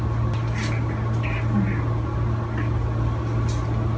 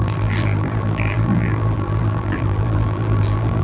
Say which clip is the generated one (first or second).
second